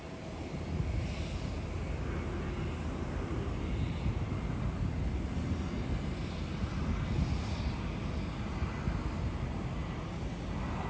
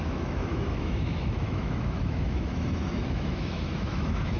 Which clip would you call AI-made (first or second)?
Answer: second